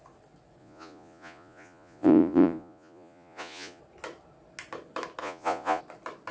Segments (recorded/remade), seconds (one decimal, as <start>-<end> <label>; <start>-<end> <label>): 0.0-0.6 recorded; 0.6-3.8 remade; 3.8-5.2 recorded; 5.2-5.8 remade; 5.8-6.3 recorded